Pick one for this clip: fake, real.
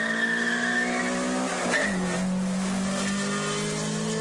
real